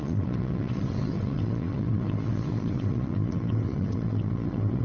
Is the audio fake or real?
fake